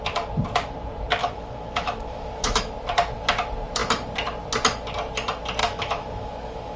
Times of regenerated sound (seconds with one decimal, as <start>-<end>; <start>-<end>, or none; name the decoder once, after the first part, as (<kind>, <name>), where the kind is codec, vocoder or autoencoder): 1.2-2.6 (autoencoder, DAC-VAE); 5.6-6.8